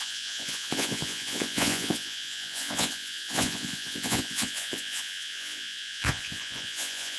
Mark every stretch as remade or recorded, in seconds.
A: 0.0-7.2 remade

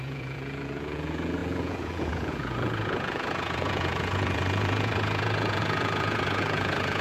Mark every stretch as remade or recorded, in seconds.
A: 0.0-7.0 remade

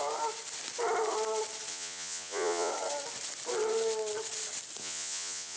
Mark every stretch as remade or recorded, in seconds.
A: 0.0-1.7 recorded; 1.7-2.7 remade; 2.7-4.8 recorded; 4.8-5.6 remade

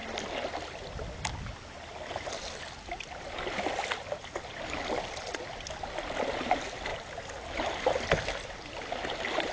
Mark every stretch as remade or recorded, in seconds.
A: 0.0-9.5 recorded

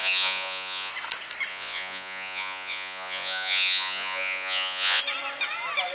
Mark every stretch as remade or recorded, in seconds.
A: 0.0-0.9 remade; 0.9-1.5 recorded; 1.5-5.0 remade; 5.0-5.9 recorded

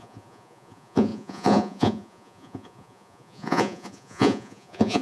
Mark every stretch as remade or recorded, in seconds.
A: 0.0-5.0 remade

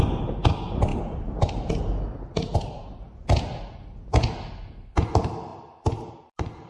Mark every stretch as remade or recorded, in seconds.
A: 0.0-6.7 recorded

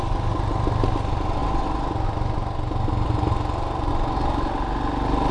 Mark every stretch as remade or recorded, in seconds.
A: 0.0-5.3 recorded